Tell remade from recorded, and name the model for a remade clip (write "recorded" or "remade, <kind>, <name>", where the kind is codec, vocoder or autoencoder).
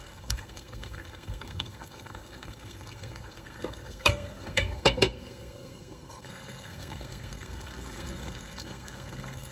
remade, codec, SNAC